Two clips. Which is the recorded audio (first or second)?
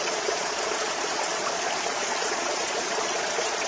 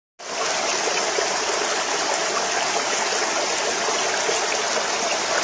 second